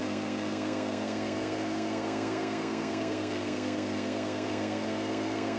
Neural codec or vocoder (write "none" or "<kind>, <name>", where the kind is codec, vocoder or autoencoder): codec, SNAC